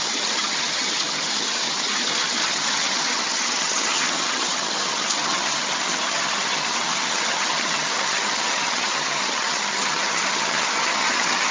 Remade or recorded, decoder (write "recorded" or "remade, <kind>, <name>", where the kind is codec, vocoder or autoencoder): remade, vocoder, HiFi-GAN